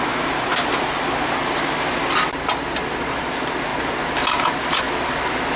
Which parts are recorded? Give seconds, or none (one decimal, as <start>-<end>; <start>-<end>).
0.0-5.6